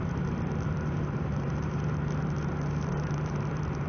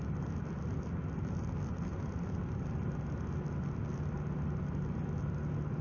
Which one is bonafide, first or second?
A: second